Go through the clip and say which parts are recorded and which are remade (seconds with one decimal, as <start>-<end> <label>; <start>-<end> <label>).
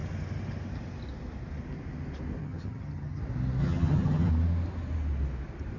0.0-2.4 recorded; 2.4-3.2 remade; 3.2-3.6 recorded; 3.6-4.3 remade; 4.3-5.8 recorded